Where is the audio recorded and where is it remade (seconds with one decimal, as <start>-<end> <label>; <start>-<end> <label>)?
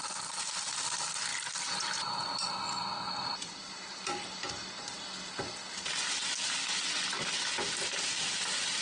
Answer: 0.0-8.8 recorded